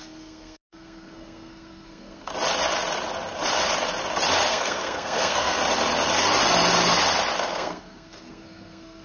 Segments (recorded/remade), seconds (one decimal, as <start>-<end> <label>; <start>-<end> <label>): 0.0-2.3 remade; 2.3-4.5 recorded; 4.5-5.6 remade; 5.6-7.4 recorded; 7.4-9.0 remade